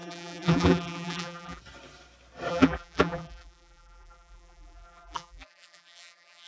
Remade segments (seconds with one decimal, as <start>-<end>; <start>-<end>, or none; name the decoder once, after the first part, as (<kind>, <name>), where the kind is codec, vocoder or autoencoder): 0.0-1.6 (vocoder, BigVGAN v2); 2.5-6.5